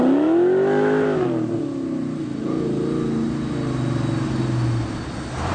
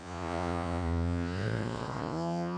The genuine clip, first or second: first